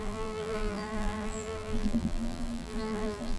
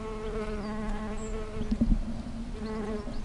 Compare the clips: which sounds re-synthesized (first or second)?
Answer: first